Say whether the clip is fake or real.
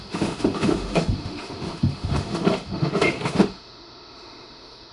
fake